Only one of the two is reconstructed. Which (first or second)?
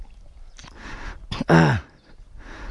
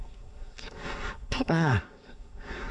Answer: second